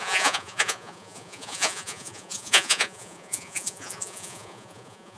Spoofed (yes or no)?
yes